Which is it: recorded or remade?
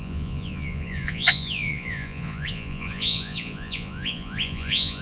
remade